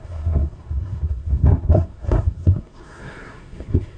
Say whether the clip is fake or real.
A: fake